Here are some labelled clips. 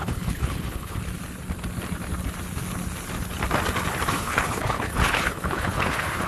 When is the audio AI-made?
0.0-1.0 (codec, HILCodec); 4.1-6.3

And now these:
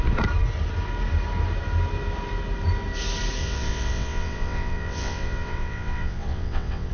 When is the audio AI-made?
3.4-6.9 (vocoder, WaveNeXt)

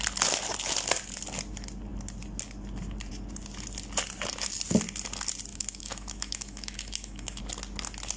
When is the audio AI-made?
5.5-7.4 (autoencoder, DAC-VAE)

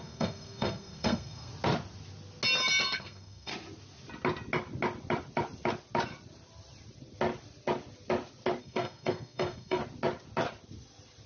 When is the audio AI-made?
0.0-1.5 (codec, SNAC); 3.0-3.5; 8.6-9.8